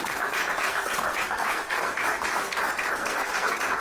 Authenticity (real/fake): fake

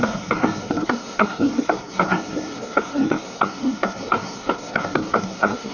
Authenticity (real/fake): fake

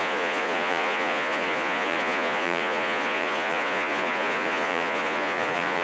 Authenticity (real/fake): fake